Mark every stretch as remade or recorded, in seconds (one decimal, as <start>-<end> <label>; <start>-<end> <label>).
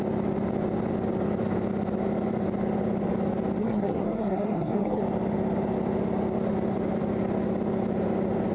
0.0-3.6 recorded; 3.6-5.0 remade; 5.0-8.5 recorded